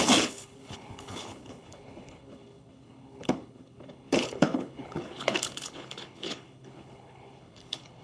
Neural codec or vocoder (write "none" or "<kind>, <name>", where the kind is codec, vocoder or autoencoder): codec, HILCodec